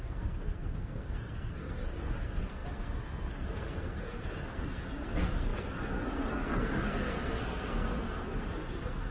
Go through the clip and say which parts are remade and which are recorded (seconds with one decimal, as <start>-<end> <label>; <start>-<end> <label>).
0.0-9.1 remade

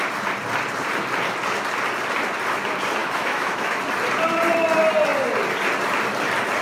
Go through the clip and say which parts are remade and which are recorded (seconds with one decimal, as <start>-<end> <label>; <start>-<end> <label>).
0.0-3.0 recorded; 3.0-3.8 remade; 3.8-6.6 recorded

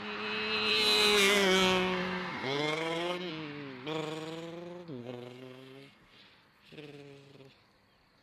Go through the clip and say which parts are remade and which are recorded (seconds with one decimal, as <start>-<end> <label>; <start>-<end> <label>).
0.0-0.7 recorded; 0.7-3.3 remade; 3.3-5.0 recorded; 5.0-6.2 remade; 6.2-8.2 recorded

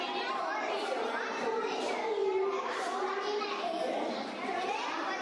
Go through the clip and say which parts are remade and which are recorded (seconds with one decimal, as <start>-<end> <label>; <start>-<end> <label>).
0.0-2.2 recorded; 2.2-4.5 remade; 4.5-5.2 recorded